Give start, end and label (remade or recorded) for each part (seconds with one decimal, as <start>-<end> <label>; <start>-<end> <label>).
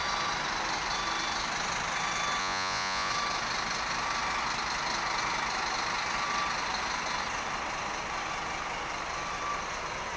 0.0-2.4 recorded; 2.4-3.1 remade; 3.1-10.2 recorded